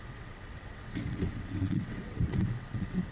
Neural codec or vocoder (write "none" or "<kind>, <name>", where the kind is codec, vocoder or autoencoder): vocoder, WaveNeXt